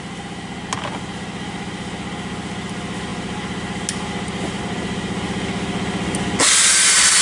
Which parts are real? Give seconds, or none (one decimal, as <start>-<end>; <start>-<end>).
0.0-7.2